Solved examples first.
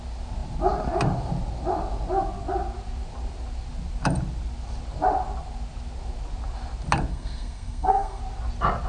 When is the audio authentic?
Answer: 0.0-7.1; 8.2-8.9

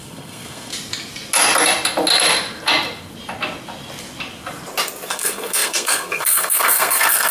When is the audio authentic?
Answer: 0.7-5.1

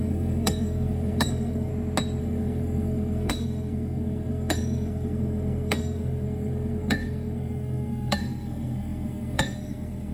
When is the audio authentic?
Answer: 1.7-2.2

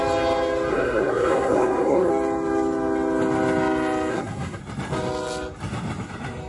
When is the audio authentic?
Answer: 0.0-0.7; 2.1-4.1; 4.6-6.5

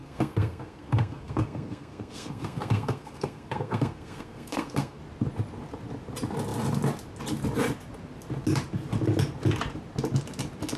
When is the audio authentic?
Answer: 5.0-10.8

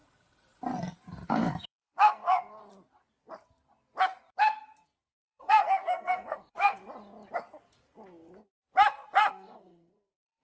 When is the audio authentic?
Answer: 0.0-1.3; 2.6-5.1; 6.8-9.3

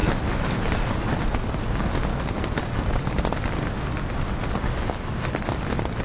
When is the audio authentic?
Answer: 0.0-2.1; 2.6-6.0

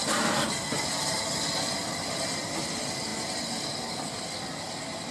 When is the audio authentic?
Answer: 0.0-5.1